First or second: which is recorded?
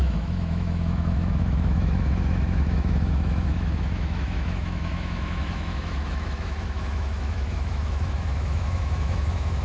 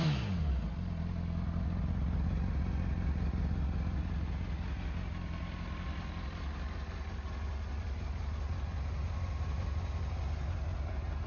second